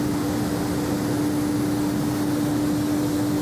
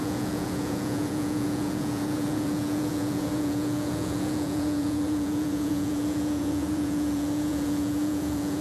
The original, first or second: first